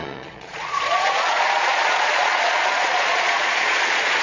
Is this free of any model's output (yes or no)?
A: no